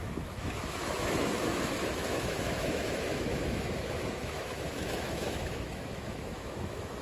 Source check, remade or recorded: remade